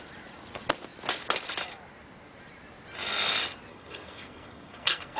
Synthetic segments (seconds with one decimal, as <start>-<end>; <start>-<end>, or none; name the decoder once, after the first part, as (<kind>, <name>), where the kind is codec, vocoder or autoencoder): 3.7-5.2 (codec, SNAC)